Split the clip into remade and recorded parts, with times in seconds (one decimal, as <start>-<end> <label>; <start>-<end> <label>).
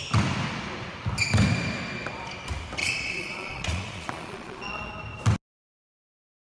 0.0-2.8 recorded; 2.8-4.9 remade; 4.9-6.5 recorded